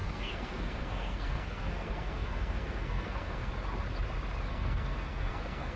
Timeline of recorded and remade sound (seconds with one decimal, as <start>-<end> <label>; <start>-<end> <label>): 0.0-3.5 remade; 3.5-4.5 recorded; 4.5-5.8 remade